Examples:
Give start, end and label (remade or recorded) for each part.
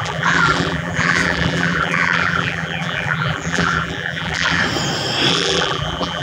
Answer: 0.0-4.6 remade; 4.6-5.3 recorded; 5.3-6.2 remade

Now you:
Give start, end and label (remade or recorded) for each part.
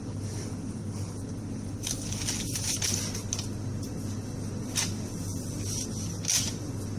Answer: 0.0-7.0 recorded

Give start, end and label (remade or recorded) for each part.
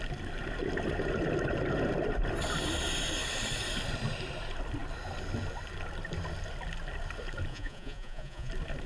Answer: 0.0-7.5 recorded; 7.5-8.5 remade; 8.5-8.9 recorded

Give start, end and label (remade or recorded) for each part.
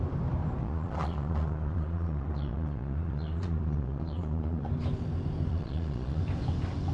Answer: 0.0-0.6 recorded; 0.6-4.7 remade; 4.7-5.5 recorded; 5.5-6.2 remade; 6.2-6.9 recorded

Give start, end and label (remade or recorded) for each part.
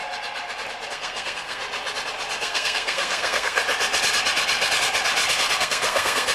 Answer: 0.0-0.9 recorded; 0.9-1.6 remade; 1.6-2.4 recorded; 2.4-3.6 remade; 3.6-5.6 recorded; 5.6-6.3 remade